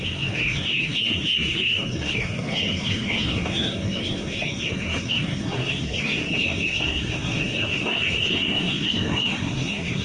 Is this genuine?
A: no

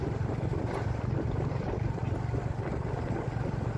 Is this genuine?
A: yes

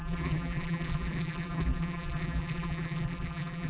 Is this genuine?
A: no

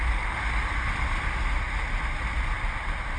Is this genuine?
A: yes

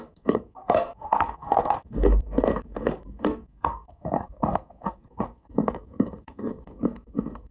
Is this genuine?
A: no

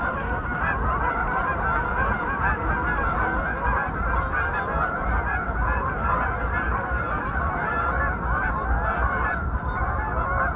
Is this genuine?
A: yes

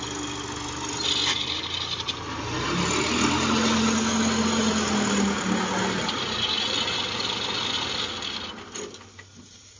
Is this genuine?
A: yes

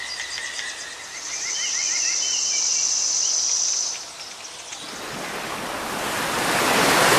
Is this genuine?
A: yes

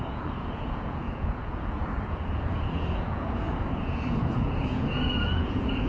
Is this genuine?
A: no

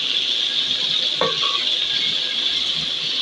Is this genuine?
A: yes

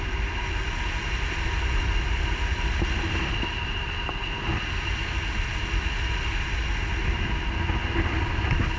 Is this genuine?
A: yes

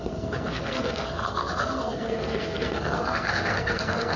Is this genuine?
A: no